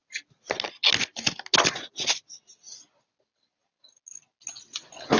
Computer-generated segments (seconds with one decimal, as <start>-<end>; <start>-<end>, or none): none

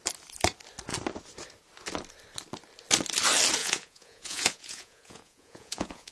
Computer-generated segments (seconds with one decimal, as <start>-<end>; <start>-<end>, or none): 3.6-6.1

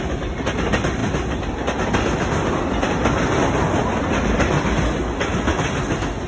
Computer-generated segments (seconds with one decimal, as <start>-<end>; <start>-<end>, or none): none

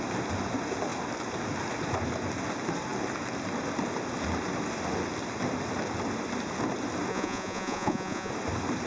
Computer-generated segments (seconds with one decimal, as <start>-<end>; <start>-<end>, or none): 7.1-8.3

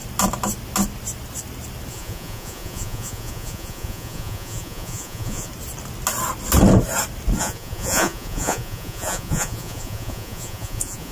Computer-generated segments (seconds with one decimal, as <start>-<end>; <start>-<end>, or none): 1.9-5.5; 7.4-11.1

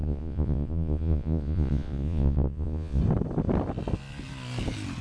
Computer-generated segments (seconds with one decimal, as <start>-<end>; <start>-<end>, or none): 0.0-3.0

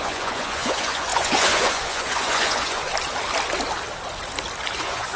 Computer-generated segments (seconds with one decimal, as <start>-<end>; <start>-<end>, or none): 0.0-2.9; 4.8-5.2

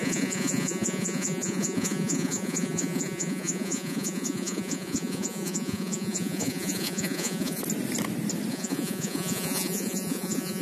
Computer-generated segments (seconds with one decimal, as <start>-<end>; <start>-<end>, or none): 0.0-7.6; 8.5-10.6